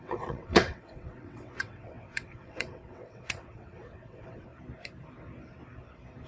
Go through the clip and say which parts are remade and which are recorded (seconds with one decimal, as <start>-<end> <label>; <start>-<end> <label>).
0.0-4.5 remade; 4.5-6.3 recorded